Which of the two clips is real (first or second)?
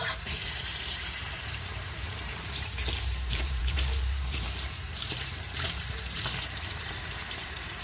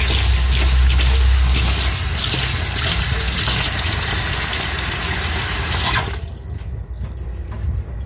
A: second